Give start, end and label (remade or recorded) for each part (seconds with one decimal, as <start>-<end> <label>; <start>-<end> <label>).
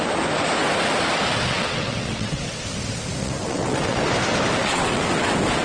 0.0-1.5 recorded; 1.5-2.6 remade; 2.6-3.2 recorded; 3.2-4.0 remade; 4.0-4.6 recorded; 4.6-5.1 remade; 5.1-5.6 recorded